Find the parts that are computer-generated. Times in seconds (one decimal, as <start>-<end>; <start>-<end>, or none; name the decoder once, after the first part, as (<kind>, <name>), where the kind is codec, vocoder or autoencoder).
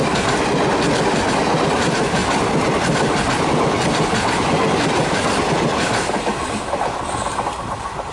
none